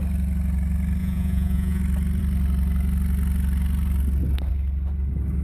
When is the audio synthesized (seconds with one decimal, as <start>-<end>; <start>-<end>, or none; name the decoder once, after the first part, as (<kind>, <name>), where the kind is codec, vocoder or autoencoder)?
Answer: 1.0-1.8 (vocoder, Vocos)